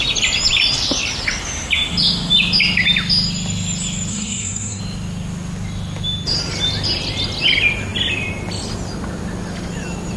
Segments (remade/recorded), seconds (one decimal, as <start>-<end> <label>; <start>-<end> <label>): 0.0-4.1 recorded; 4.1-4.8 remade; 4.8-10.2 recorded